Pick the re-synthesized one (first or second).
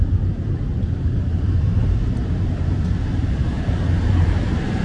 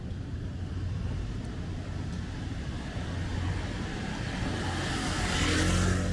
first